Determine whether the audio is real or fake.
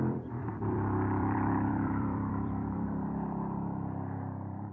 fake